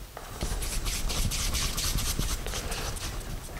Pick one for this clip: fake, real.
real